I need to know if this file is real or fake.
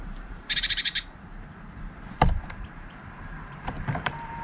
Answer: fake